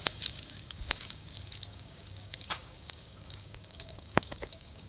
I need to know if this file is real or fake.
fake